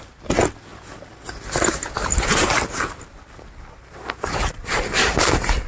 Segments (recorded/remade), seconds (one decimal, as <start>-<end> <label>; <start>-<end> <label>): 0.0-5.7 recorded